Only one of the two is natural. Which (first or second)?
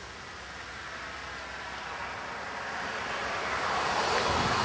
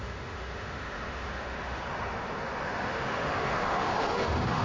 first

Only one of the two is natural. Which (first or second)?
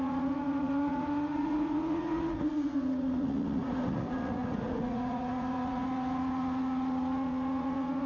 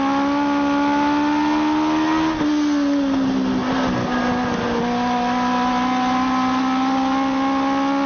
second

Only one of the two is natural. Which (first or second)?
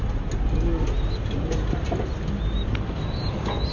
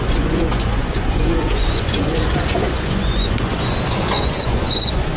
first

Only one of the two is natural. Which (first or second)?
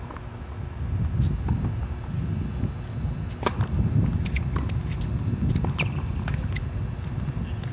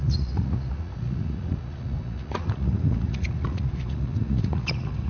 first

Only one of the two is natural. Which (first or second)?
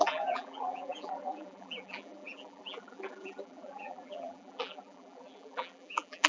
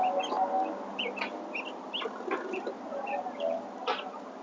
second